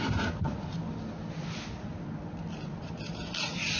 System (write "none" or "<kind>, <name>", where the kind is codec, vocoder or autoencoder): none